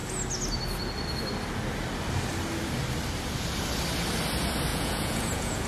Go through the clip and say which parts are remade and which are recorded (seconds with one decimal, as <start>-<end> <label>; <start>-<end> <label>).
0.0-4.7 recorded; 4.7-5.7 remade